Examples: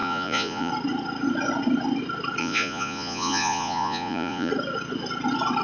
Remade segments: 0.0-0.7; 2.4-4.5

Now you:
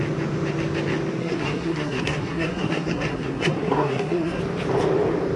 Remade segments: 1.2-4.4

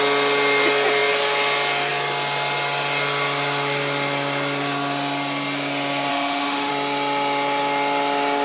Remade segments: 6.1-6.7

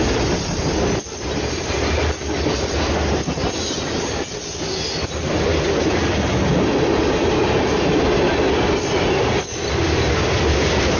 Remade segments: none

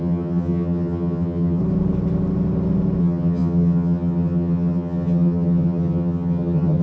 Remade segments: 0.0-1.6; 3.0-6.8

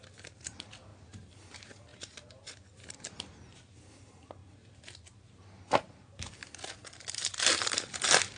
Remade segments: 0.0-0.9; 1.5-1.9; 2.9-4.4; 5.8-6.4; 7.0-8.4

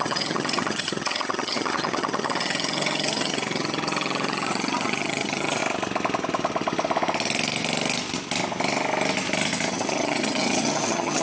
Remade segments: 0.0-5.6; 9.7-11.2

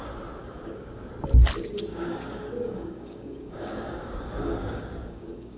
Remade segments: 0.4-1.1; 1.9-5.6